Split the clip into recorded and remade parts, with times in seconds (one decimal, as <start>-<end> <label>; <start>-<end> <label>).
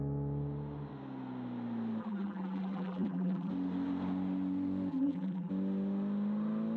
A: 0.0-2.0 recorded; 2.0-3.5 remade; 3.5-4.9 recorded; 4.9-5.5 remade; 5.5-6.8 recorded